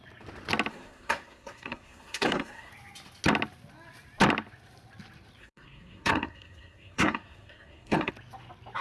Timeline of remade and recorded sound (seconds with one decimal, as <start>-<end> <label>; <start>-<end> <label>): 0.0-0.7 recorded; 0.7-2.7 remade; 2.7-5.4 recorded; 5.4-8.1 remade; 8.1-8.8 recorded